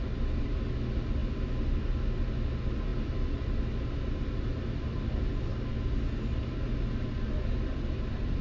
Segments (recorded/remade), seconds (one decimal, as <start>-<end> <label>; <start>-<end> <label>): 0.0-8.4 recorded